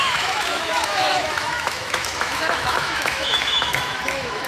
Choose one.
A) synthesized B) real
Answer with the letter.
A